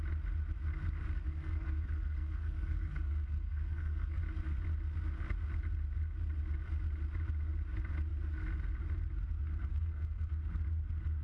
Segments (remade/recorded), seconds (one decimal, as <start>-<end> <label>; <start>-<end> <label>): 0.0-1.2 recorded; 1.2-4.2 remade; 4.2-9.7 recorded; 9.7-10.3 remade; 10.3-11.2 recorded